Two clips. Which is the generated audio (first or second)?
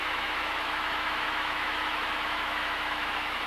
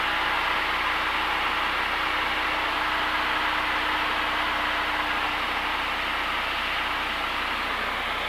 first